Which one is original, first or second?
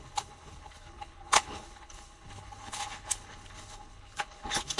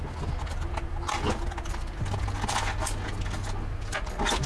second